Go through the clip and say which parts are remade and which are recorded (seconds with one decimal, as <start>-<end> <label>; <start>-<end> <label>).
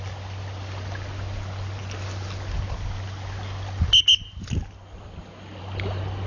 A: 0.0-6.3 recorded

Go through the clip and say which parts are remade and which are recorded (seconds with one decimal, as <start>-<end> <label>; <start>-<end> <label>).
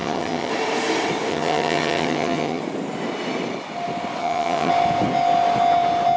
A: 0.0-0.5 remade; 0.5-1.3 recorded; 1.3-2.6 remade; 2.6-4.2 recorded; 4.2-4.7 remade; 4.7-6.2 recorded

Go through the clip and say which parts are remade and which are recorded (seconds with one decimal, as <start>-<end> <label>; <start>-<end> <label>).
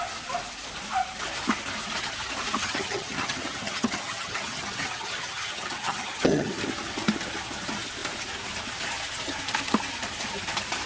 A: 0.0-2.6 recorded; 2.6-6.5 remade; 6.5-10.9 recorded